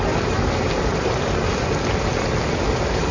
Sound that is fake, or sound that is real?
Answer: real